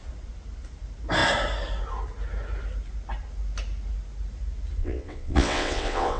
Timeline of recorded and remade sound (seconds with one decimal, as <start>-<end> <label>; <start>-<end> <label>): 0.0-4.8 recorded; 4.8-6.2 remade